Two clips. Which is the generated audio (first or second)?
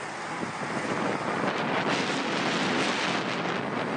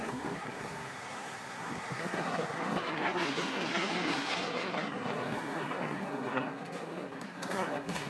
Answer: second